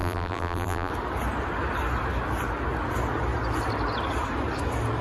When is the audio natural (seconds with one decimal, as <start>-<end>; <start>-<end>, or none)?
0.9-5.0